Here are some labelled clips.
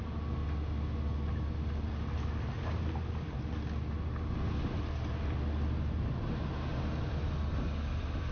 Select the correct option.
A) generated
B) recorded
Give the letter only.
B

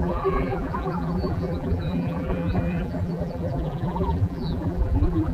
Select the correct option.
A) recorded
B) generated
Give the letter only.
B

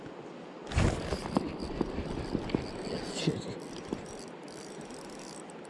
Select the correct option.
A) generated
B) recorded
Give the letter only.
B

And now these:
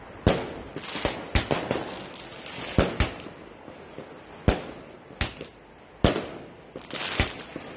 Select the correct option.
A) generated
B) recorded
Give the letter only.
B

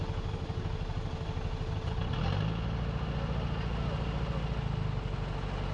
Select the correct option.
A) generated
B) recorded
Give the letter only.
B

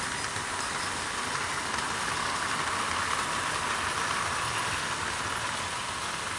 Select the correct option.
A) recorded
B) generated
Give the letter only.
A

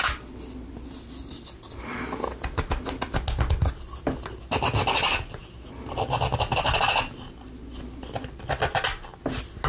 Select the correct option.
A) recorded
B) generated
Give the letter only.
A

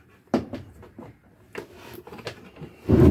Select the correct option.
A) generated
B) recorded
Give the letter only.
B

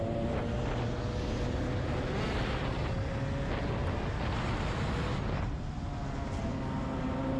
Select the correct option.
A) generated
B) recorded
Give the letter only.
B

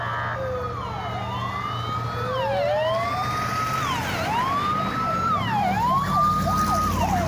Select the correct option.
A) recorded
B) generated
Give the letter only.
A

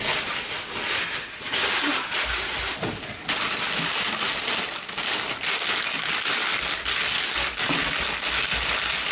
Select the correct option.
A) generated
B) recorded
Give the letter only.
B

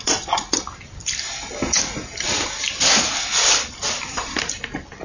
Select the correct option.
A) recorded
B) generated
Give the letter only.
A